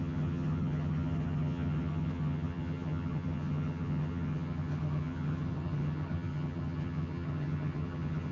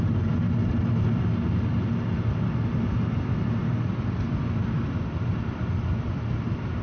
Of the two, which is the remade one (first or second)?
first